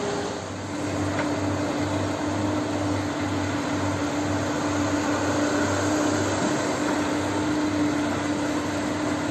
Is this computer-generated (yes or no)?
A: no